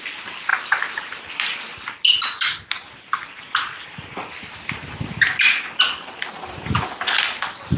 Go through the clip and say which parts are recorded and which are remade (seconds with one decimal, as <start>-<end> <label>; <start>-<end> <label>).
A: 0.0-7.8 recorded